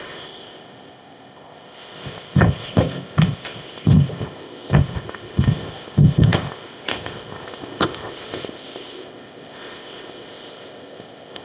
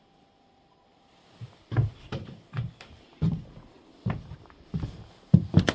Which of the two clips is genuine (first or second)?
second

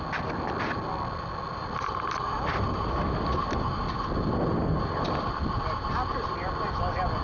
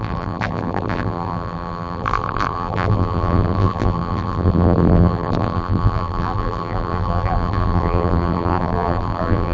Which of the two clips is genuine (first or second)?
first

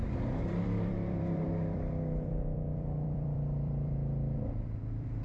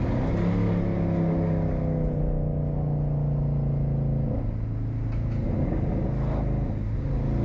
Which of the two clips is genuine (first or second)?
second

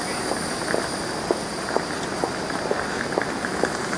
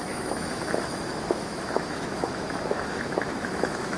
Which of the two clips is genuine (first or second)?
first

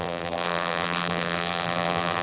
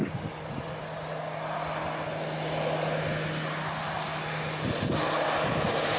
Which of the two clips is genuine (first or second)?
second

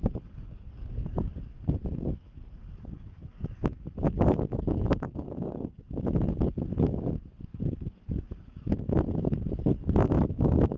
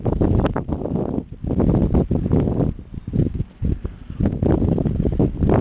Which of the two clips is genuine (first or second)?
second